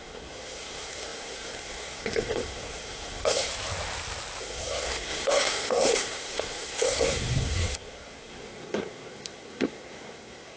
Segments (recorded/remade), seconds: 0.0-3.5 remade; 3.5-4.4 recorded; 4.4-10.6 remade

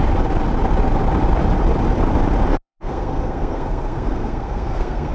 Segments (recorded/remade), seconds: 0.0-2.5 recorded; 2.5-5.1 remade

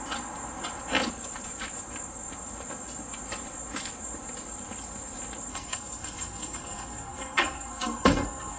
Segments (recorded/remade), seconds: 0.0-5.5 recorded; 5.5-8.6 remade

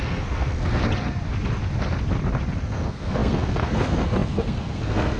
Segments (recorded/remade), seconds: 0.0-0.8 remade; 0.8-2.6 recorded; 2.6-5.2 remade

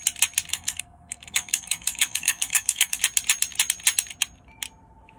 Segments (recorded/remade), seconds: 0.0-0.5 recorded; 0.5-3.0 remade; 3.0-5.2 recorded

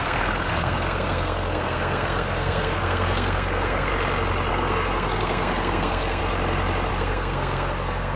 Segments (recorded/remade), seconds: 0.0-3.9 remade; 3.9-4.5 recorded; 4.5-6.2 remade; 6.2-6.9 recorded; 6.9-8.2 remade

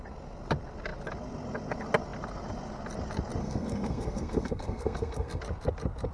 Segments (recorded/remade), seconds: 0.0-3.4 recorded; 3.4-5.4 remade; 5.4-6.1 recorded